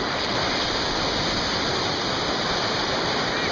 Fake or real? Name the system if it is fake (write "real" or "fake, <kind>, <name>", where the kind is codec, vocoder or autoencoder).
real